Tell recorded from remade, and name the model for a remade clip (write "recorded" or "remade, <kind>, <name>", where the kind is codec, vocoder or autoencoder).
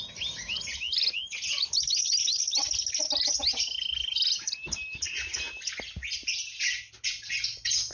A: recorded